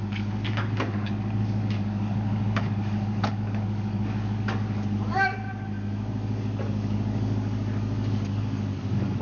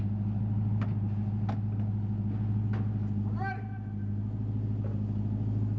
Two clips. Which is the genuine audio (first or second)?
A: second